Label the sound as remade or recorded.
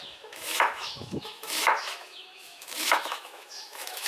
remade